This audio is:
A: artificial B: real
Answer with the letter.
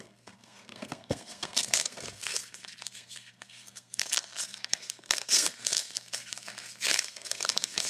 A